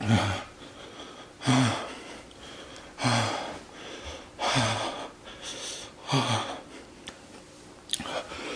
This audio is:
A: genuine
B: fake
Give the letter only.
A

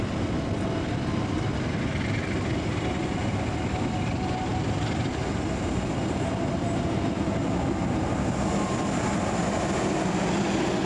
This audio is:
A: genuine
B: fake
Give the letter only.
A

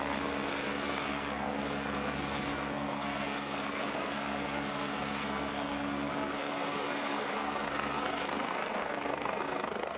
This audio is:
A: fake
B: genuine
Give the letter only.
A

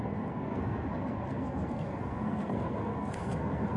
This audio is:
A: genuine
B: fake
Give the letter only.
B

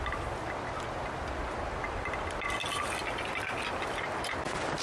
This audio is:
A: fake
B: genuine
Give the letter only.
B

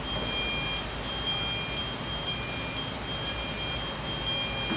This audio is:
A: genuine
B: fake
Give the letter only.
A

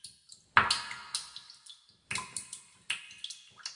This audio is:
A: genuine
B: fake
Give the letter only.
A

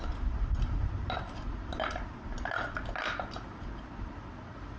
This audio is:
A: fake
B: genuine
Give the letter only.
B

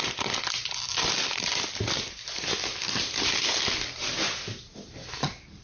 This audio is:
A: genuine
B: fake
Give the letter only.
A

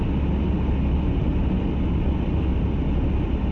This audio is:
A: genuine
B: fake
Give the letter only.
A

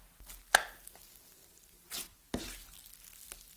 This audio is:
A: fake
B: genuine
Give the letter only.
B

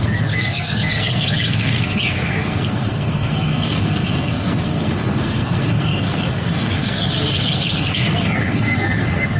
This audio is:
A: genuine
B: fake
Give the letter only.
B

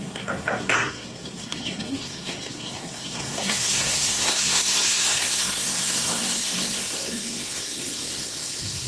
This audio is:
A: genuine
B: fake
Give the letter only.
B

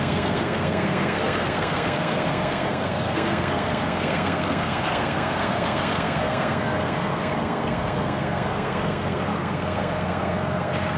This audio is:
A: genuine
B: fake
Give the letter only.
B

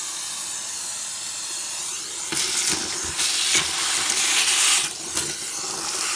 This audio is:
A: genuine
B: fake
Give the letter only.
A